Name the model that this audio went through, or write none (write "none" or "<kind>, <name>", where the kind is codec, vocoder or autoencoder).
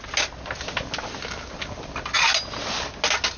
none